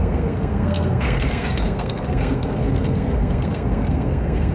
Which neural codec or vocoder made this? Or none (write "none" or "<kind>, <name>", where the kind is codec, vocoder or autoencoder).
codec, SNAC